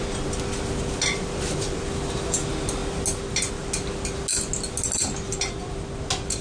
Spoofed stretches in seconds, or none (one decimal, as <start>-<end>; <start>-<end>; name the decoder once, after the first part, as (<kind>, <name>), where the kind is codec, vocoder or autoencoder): none